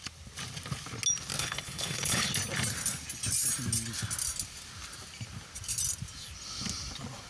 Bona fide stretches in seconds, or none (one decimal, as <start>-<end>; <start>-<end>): 0.0-1.4; 2.3-7.3